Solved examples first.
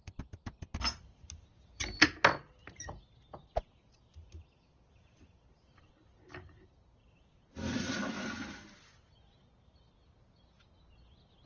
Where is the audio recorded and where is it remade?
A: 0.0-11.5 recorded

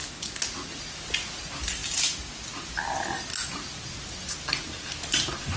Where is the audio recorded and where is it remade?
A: 0.0-5.6 recorded

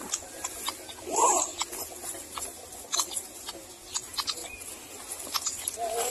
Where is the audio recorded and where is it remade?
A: 0.0-6.1 recorded

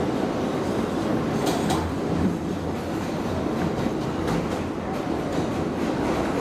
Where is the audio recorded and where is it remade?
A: 0.0-1.5 recorded; 1.5-3.3 remade; 3.3-6.4 recorded